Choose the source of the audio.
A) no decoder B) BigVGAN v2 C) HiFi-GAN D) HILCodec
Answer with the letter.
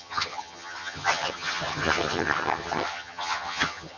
C